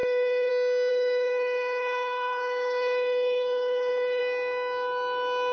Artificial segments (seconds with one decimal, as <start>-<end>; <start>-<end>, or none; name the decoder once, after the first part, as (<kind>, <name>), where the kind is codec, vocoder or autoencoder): 0.0-0.5 (codec, HILCodec); 0.9-4.2